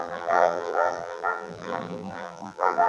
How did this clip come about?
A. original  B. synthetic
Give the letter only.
B